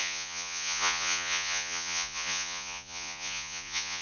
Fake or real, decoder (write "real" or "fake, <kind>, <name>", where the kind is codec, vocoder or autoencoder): fake, vocoder, Vocos